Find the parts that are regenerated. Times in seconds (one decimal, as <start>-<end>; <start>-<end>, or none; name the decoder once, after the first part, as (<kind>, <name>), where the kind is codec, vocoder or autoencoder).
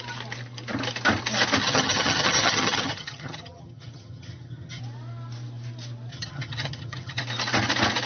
1.6-4.8 (vocoder, HiFi-GAN); 6.1-7.2